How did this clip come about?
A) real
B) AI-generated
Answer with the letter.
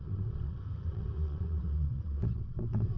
B